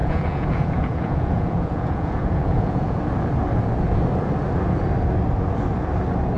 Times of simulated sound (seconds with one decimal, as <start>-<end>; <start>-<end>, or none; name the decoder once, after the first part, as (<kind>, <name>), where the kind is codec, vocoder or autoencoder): 0.0-3.0 (vocoder, Vocos)